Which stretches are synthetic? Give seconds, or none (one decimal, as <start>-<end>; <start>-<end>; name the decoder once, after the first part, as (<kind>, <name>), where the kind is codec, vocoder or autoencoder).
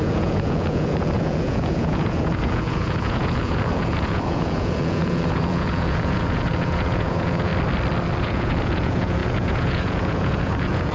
0.0-7.5 (vocoder, Vocos); 8.2-10.9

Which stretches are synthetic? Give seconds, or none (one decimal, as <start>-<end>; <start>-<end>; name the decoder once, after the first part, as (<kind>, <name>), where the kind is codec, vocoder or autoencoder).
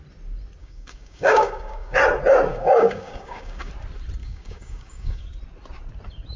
0.6-2.0 (codec, DAC); 2.5-3.7; 4.2-5.2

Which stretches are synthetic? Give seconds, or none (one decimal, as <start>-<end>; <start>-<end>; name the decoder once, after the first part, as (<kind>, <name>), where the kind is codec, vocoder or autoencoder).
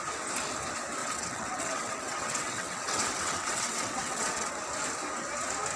1.0-4.5 (vocoder, WaveNeXt)